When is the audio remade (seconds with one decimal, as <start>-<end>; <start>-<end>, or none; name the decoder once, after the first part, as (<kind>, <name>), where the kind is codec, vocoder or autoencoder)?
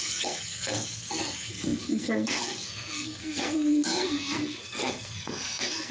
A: 0.0-5.9 (codec, SNAC)